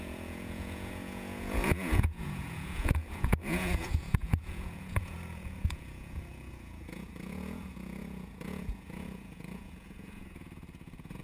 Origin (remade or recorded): remade